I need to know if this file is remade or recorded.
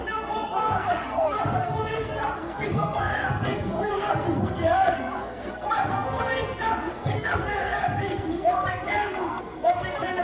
remade